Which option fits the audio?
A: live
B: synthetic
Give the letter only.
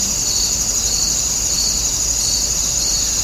A